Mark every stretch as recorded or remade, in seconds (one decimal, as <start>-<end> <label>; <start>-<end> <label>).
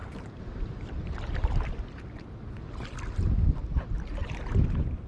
0.0-5.1 recorded